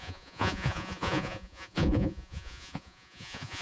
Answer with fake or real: fake